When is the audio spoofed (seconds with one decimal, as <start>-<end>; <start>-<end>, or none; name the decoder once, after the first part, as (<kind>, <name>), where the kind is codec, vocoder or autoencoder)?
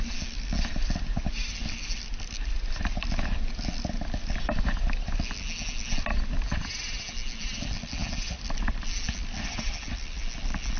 none